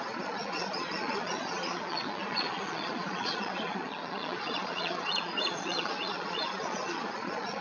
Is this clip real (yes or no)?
no